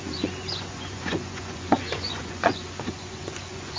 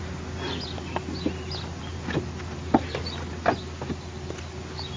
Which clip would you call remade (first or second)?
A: first